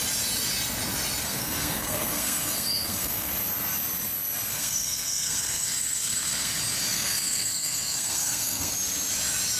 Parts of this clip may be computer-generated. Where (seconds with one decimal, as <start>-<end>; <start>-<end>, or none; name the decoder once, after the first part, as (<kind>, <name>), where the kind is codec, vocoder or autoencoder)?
1.2-3.3 (codec, SNAC); 4.5-6.5; 6.9-8.7